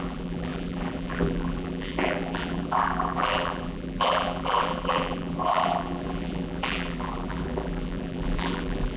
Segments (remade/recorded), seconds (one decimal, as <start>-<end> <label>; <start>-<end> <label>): 0.0-9.0 remade